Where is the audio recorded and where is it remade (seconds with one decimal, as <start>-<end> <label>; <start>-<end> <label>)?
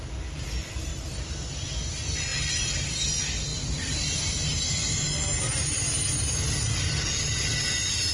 0.0-8.1 recorded